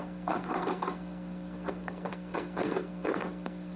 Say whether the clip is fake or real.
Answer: fake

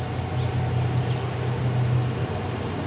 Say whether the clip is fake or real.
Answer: real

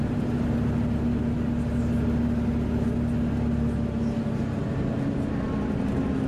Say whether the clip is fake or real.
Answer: real